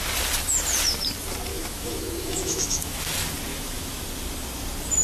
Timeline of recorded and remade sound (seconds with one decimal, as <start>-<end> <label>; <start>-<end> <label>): 0.0-1.5 recorded; 1.5-3.0 remade; 3.0-3.5 recorded; 3.5-4.0 remade; 4.0-5.0 recorded